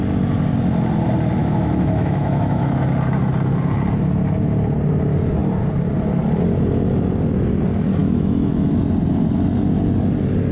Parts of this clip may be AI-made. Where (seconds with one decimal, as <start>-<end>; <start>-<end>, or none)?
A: 1.4-2.8; 8.0-8.7